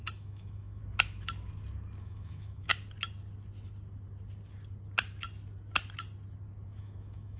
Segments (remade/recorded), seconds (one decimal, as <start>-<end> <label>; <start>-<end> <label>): 0.0-0.8 remade; 0.8-2.0 recorded; 2.0-2.7 remade; 2.7-6.8 recorded; 6.8-7.4 remade